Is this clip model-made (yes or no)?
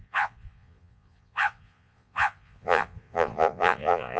yes